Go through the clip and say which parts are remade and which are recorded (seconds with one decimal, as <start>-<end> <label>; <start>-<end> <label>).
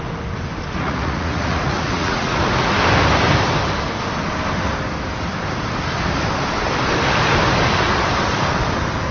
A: 0.0-0.8 recorded; 0.8-2.4 remade; 2.4-9.1 recorded